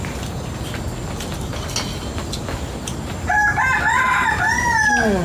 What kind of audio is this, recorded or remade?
recorded